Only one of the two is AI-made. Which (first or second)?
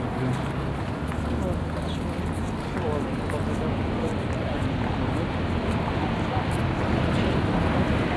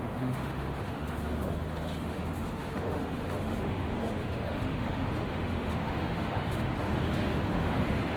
second